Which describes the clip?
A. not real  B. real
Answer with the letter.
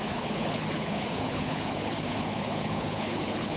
A